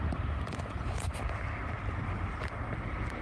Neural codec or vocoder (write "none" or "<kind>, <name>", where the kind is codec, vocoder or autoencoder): none